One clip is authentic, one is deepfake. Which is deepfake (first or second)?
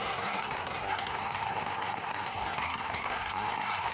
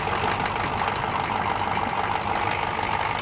first